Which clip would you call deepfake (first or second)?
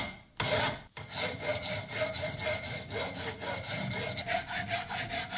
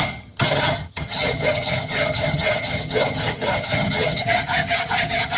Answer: second